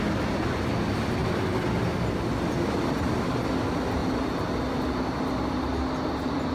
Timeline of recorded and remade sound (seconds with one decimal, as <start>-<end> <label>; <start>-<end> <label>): 0.0-6.5 recorded